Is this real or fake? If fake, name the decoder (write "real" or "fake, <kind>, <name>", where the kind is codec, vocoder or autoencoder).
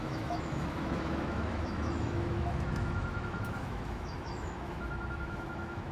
fake, autoencoder, DAC-VAE